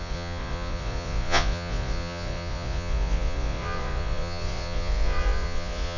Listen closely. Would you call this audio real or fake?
fake